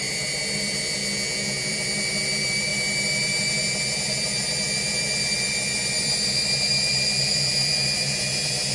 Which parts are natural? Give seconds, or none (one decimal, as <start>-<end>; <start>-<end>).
1.0-1.7

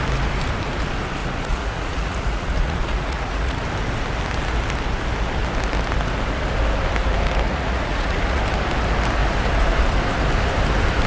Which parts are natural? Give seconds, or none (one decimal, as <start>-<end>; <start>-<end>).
0.0-1.2; 3.6-7.5; 8.4-11.1

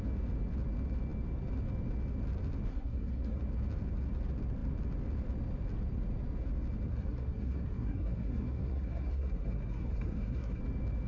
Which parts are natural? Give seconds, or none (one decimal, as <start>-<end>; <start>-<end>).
0.0-2.7; 3.4-6.9; 10.6-11.1

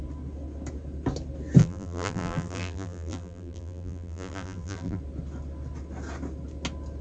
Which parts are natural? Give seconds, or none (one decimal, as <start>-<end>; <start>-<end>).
0.0-1.6; 5.0-7.0